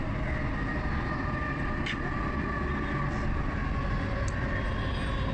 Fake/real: real